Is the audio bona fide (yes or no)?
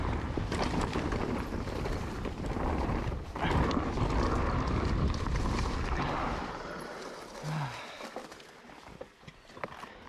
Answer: no